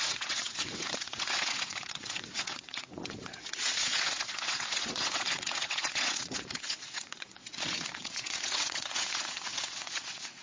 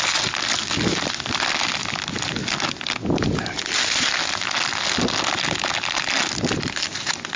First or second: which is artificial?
first